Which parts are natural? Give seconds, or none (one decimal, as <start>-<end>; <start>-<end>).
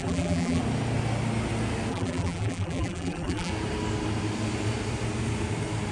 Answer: 0.6-1.9; 3.5-5.9